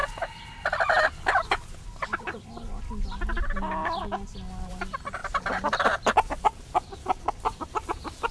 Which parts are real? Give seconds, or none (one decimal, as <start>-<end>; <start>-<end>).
0.0-8.3